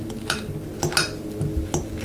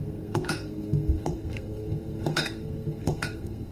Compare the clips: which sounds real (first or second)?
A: first